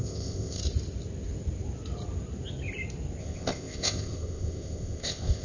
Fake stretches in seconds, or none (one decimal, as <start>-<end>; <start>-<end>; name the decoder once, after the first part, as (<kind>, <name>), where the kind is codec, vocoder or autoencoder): 0.0-0.6 (codec, ZipCodec); 3.2-5.4